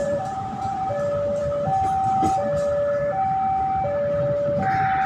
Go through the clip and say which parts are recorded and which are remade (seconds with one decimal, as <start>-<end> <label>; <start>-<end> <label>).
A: 0.0-0.8 remade; 0.8-5.1 recorded